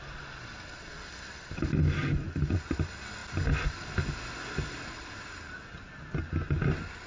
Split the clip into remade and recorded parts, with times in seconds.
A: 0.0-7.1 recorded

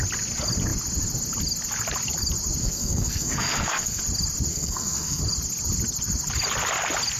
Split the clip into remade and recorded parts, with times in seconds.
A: 0.0-2.6 recorded; 2.6-4.0 remade; 4.0-4.5 recorded; 4.5-5.2 remade; 5.2-7.2 recorded

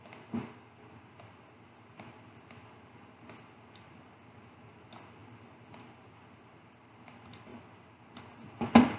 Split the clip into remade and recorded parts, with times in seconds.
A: 0.0-9.0 recorded

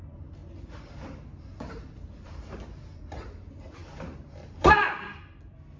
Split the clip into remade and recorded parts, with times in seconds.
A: 0.0-5.8 recorded

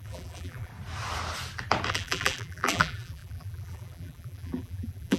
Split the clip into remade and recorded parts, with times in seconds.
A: 0.0-0.7 remade; 0.7-1.9 recorded; 1.9-5.2 remade